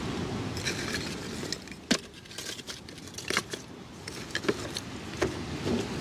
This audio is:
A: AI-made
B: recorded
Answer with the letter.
B